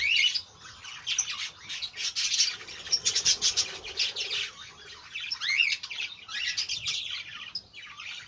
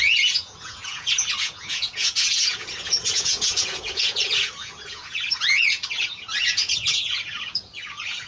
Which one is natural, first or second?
first